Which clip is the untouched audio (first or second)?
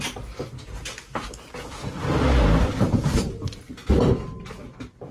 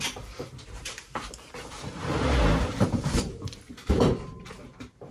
first